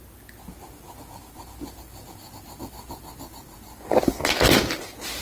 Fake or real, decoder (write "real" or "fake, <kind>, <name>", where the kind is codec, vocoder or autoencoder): real